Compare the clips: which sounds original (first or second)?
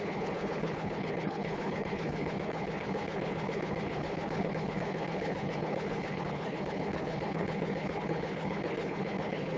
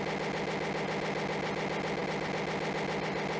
second